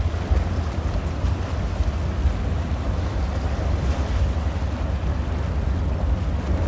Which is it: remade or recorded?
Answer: recorded